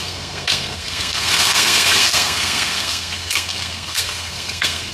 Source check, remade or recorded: remade